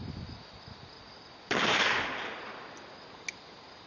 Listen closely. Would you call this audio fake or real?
real